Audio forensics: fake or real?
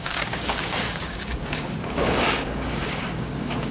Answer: fake